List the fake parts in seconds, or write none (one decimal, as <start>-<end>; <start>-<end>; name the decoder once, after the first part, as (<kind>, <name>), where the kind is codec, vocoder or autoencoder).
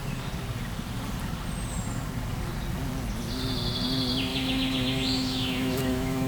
4.3-6.3 (autoencoder, DAC-VAE)